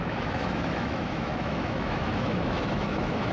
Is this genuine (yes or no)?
no